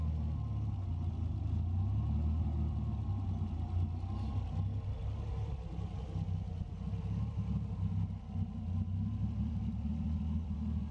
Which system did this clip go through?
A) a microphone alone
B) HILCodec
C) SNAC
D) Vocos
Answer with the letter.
A